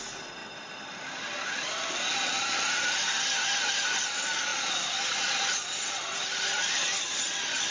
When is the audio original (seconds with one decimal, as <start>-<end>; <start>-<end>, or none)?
0.0-7.7